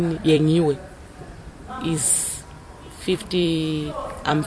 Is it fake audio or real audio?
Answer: fake